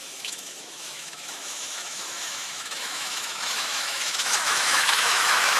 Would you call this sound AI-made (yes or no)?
yes